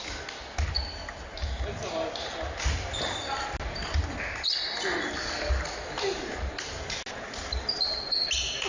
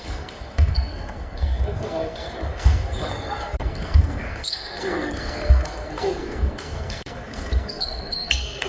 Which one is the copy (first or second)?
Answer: second